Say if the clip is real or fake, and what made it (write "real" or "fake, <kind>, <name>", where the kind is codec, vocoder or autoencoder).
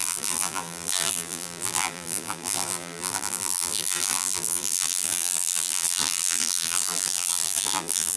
fake, vocoder, BigVGAN v2